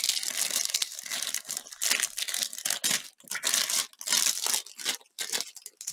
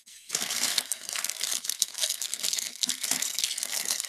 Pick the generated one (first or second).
second